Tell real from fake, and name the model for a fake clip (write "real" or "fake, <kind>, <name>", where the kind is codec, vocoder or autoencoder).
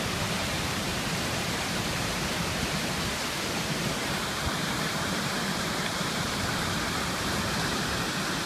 fake, vocoder, BigVGAN v2